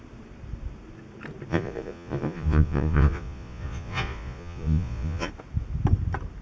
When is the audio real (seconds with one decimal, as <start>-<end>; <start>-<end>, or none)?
0.0-1.5; 5.3-6.4